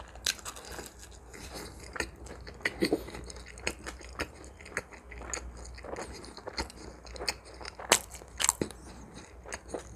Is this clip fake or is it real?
real